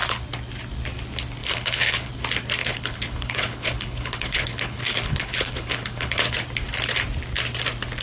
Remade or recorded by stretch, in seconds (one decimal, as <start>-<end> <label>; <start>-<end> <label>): 0.0-1.4 recorded; 1.4-2.1 remade; 2.1-2.6 recorded; 2.6-6.4 remade; 6.4-8.0 recorded